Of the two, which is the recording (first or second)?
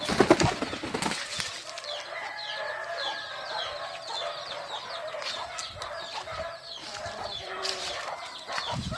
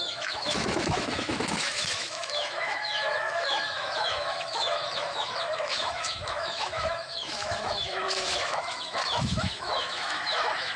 first